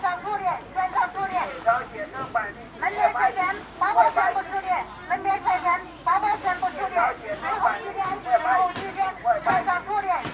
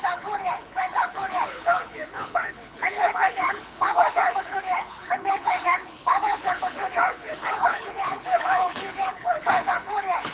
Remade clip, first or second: second